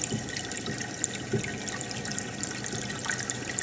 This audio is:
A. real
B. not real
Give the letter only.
A